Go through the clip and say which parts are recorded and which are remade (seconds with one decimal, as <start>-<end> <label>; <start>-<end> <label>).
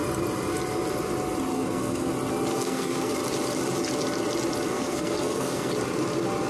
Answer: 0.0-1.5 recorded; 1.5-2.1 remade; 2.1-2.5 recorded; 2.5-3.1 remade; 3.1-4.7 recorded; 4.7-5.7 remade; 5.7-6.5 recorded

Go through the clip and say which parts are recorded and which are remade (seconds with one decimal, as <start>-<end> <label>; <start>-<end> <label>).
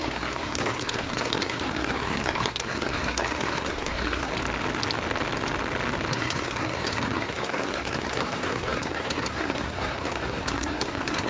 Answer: 0.0-4.3 remade; 4.3-6.1 recorded; 6.1-11.3 remade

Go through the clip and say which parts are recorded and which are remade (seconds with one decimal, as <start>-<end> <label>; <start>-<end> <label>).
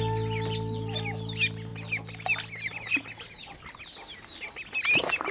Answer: 0.0-5.3 recorded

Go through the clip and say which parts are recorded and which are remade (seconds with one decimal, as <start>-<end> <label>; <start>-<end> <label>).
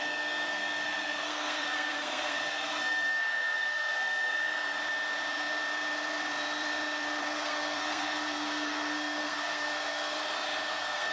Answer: 0.0-4.8 remade; 4.8-7.2 recorded; 7.2-10.2 remade; 10.2-10.7 recorded; 10.7-11.1 remade